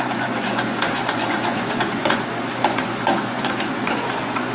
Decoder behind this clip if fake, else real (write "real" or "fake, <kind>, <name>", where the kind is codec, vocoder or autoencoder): fake, vocoder, Vocos